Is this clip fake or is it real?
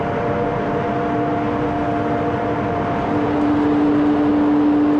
real